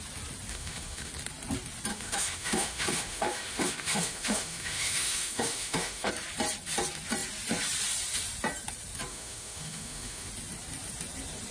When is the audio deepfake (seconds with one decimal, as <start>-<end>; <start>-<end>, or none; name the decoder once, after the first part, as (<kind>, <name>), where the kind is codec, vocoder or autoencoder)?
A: 0.5-1.1 (autoencoder, DAC-VAE); 1.9-6.1; 9.1-10.3